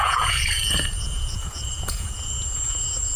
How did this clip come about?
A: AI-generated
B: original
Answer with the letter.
A